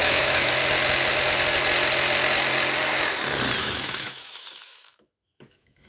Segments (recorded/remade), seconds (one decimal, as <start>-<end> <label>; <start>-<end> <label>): 0.0-0.5 remade; 0.5-3.6 recorded; 3.6-5.9 remade